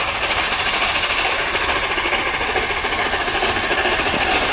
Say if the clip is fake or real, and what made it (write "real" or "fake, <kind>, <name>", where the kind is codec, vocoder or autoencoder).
real